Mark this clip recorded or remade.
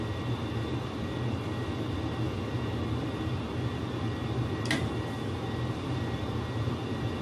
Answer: recorded